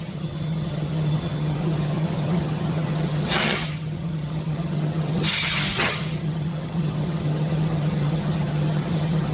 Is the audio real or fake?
fake